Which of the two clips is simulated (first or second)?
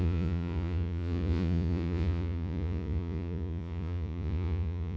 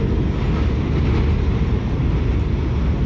first